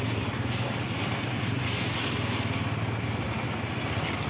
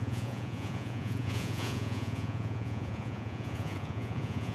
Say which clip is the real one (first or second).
first